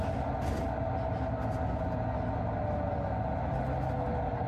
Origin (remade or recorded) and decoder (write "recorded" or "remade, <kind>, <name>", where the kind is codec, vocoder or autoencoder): recorded